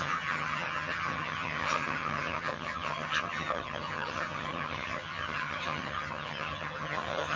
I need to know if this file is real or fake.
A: fake